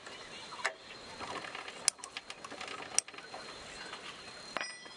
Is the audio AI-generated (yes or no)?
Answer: no